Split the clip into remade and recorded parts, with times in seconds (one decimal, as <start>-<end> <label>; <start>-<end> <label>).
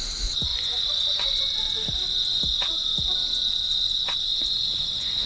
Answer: 0.0-0.5 recorded; 0.5-1.4 remade; 1.4-4.3 recorded; 4.3-5.3 remade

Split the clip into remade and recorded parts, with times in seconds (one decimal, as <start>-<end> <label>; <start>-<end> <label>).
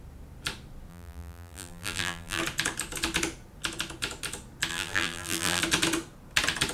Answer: 0.0-0.9 recorded; 0.9-2.4 remade; 2.4-4.7 recorded; 4.7-5.6 remade; 5.6-6.7 recorded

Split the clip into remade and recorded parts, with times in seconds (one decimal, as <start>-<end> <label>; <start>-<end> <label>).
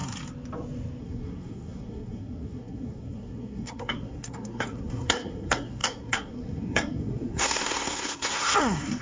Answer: 0.0-1.0 recorded; 1.0-9.0 remade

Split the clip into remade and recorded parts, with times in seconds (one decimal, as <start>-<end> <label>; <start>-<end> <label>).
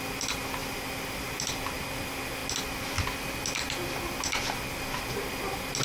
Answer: 0.0-0.6 recorded; 0.6-1.8 remade; 1.8-5.8 recorded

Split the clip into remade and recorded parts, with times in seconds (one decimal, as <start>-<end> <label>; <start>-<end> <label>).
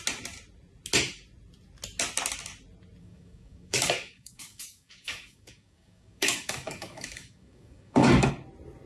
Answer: 0.0-3.0 recorded; 3.0-8.3 remade; 8.3-8.9 recorded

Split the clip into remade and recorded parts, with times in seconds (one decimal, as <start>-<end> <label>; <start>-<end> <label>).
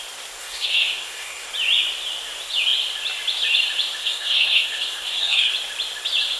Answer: 0.0-0.4 recorded; 0.4-1.5 remade; 1.5-4.0 recorded; 4.0-5.5 remade; 5.5-6.4 recorded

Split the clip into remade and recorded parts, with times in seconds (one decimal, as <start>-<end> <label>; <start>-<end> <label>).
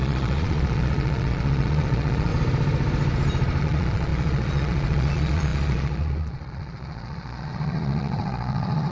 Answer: 0.0-2.3 remade; 2.3-3.6 recorded; 3.6-8.9 remade